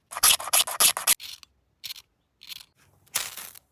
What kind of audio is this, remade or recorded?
recorded